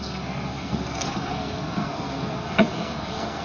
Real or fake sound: fake